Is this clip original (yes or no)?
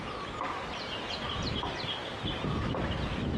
yes